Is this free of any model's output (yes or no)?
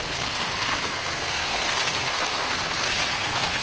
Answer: no